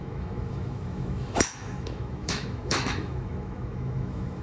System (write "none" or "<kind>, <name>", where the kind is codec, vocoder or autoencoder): autoencoder, DAC-VAE